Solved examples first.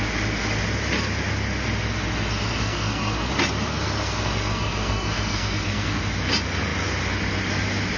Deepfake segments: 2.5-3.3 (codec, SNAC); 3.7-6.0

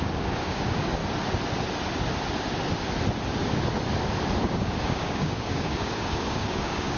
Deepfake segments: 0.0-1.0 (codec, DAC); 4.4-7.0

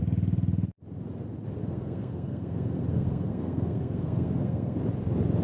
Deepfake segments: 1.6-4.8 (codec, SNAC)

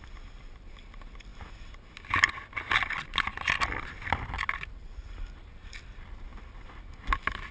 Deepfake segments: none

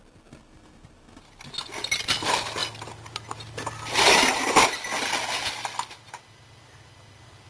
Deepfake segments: none

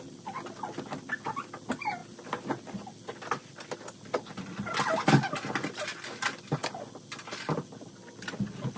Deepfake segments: none

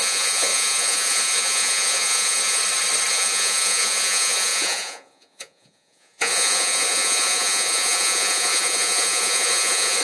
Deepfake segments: 0.0-2.6 (vocoder, Vocos); 3.1-10.0